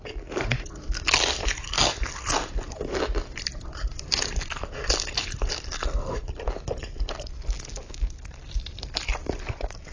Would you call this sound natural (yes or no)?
yes